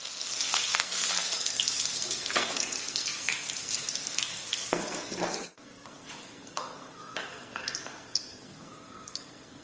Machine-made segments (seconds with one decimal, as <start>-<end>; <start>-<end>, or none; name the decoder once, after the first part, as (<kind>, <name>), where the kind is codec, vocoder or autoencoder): 0.0-9.6 (codec, SNAC)